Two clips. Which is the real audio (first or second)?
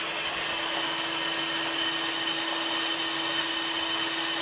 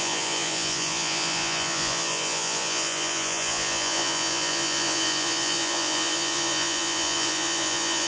first